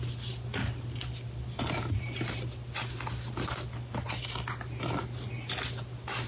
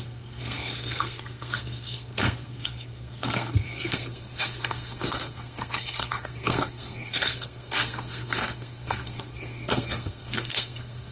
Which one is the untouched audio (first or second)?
first